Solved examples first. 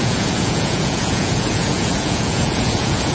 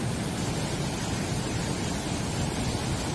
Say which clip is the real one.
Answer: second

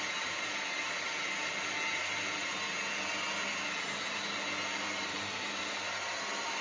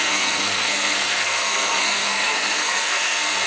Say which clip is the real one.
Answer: first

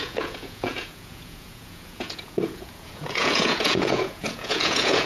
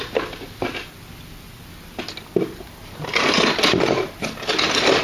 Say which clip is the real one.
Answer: second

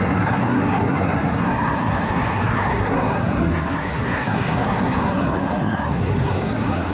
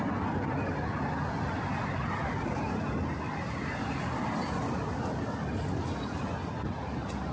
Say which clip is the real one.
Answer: second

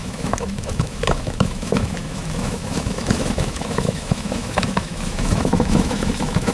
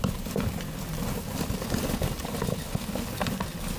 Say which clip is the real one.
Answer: second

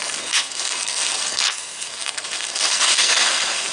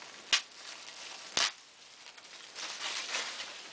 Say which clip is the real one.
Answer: second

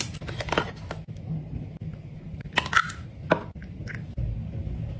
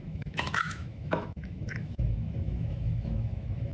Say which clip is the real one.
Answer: first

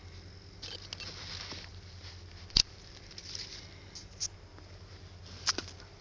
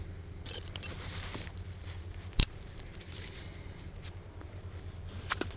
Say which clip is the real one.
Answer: first